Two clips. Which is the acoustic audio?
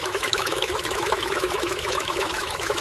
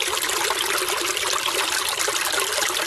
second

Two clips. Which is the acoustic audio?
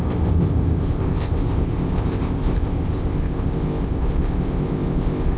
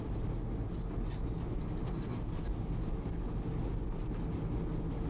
second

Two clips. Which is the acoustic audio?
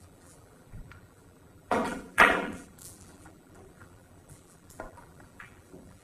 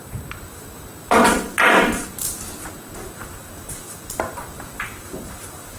second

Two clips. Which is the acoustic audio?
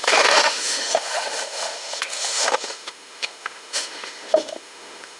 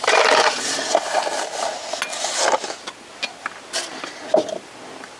second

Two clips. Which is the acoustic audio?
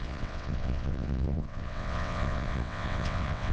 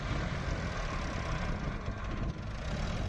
second